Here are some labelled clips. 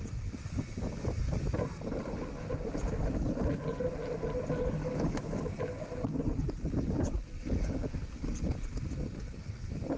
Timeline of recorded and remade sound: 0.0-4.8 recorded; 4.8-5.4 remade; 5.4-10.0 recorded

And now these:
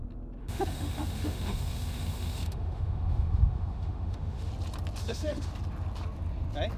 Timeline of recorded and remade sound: 0.0-0.4 recorded; 0.4-4.5 remade; 4.5-5.0 recorded; 5.0-5.5 remade; 5.5-6.8 recorded

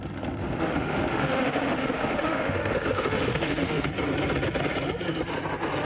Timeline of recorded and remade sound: 0.0-0.4 recorded; 0.4-3.9 remade; 3.9-5.8 recorded

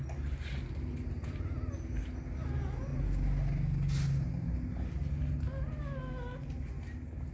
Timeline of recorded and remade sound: 0.0-7.3 recorded

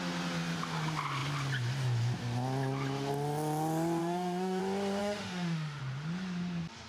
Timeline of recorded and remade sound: 0.0-4.0 recorded; 4.0-4.6 remade; 4.6-5.0 recorded; 5.0-5.8 remade; 5.8-6.9 recorded

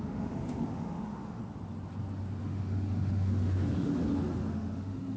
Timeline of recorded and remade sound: 0.0-1.4 remade; 1.4-2.4 recorded; 2.4-3.9 remade; 3.9-4.5 recorded; 4.5-5.2 remade